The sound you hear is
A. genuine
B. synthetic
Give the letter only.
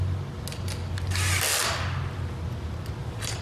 A